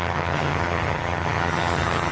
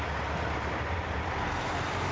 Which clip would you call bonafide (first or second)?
second